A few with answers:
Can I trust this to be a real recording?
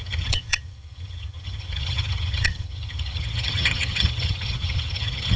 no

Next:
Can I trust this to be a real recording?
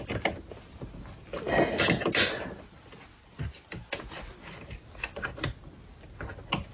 yes